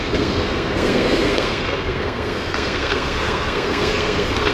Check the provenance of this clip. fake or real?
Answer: fake